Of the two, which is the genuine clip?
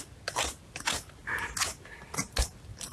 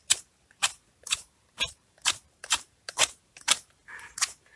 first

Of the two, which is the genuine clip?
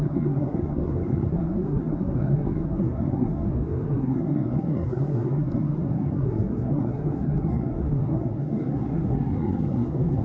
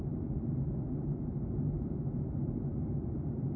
second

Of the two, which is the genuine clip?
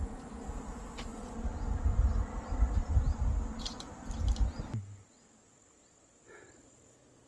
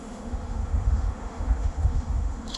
first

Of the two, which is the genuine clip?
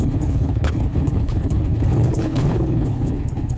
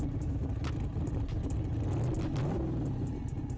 second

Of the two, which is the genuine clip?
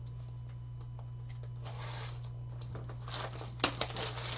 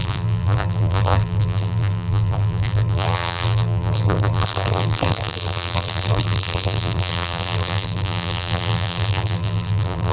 first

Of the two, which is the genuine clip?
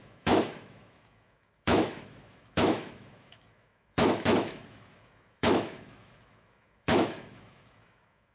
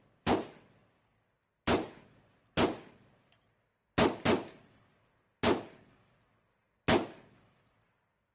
second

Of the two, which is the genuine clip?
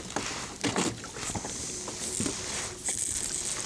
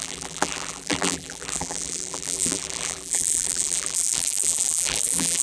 first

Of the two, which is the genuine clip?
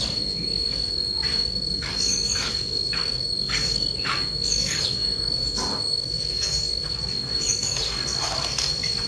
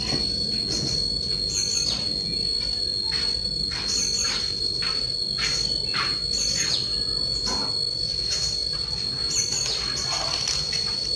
second